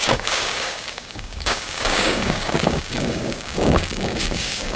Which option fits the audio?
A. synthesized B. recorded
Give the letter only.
A